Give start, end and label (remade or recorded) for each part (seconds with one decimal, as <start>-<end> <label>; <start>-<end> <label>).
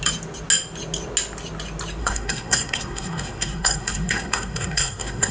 0.0-2.0 recorded; 2.0-5.3 remade